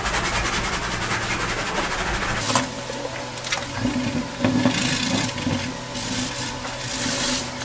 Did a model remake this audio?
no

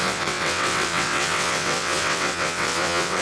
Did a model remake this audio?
yes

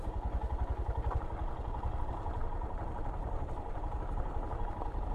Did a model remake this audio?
no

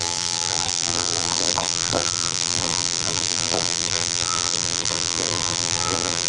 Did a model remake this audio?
yes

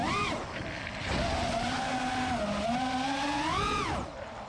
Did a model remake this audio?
no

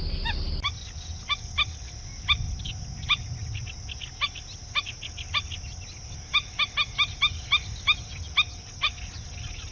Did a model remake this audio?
no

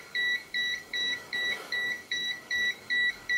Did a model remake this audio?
yes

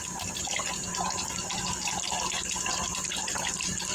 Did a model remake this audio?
no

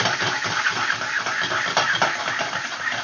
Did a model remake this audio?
no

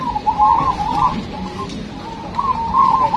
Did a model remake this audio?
no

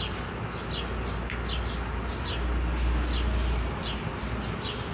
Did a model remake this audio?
no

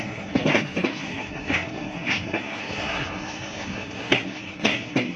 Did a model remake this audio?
yes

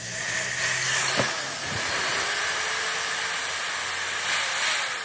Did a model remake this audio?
no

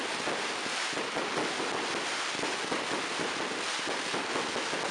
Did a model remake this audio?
no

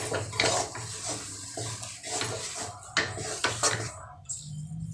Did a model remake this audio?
no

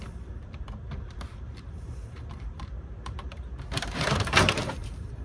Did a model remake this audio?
yes